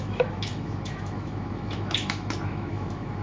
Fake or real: fake